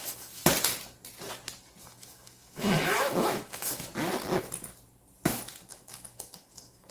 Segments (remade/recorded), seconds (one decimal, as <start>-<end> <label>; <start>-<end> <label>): 0.0-0.4 remade; 0.4-1.8 recorded; 1.8-3.9 remade; 3.9-5.7 recorded; 5.7-6.9 remade